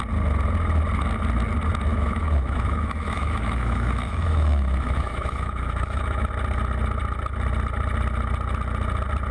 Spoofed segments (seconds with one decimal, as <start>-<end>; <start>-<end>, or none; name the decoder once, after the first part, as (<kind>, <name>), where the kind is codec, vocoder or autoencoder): 1.9-6.3 (autoencoder, DAC-VAE)